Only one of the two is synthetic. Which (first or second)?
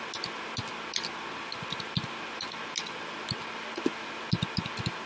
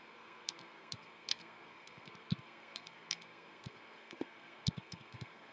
second